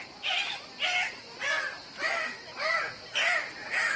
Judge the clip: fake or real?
real